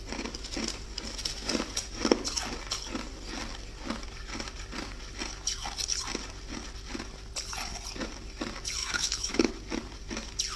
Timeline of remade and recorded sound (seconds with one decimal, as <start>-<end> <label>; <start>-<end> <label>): 0.0-8.8 recorded; 8.8-9.5 remade; 9.5-10.6 recorded